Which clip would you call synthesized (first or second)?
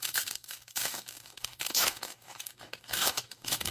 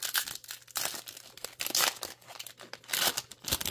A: first